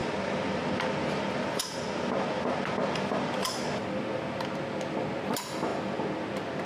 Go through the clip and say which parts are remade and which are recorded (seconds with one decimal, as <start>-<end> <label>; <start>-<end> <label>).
0.0-6.7 recorded